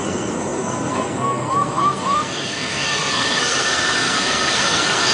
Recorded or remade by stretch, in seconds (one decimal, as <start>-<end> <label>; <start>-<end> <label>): 0.0-5.1 remade